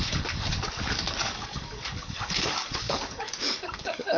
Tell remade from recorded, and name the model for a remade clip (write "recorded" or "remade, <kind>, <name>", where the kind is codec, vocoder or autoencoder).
remade, codec, DAC